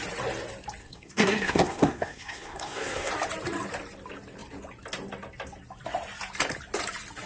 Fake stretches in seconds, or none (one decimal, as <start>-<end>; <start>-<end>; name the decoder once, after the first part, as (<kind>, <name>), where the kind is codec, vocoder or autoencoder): 0.8-3.1 (codec, SNAC)